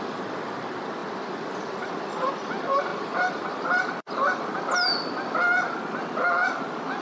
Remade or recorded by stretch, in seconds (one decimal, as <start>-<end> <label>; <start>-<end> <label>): 0.0-7.0 recorded